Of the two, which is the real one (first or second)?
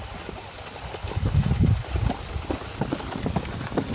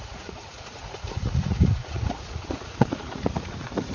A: first